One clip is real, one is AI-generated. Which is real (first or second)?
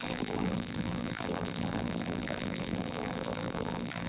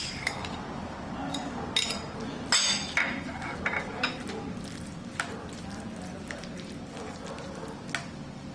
second